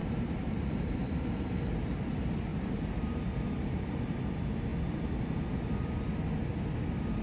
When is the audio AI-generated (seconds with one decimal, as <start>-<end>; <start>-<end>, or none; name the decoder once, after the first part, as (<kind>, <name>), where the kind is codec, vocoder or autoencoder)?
0.0-1.1 (vocoder, BigVGAN v2); 2.5-4.2